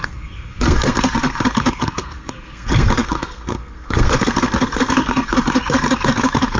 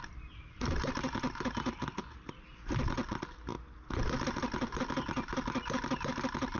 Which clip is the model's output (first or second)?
first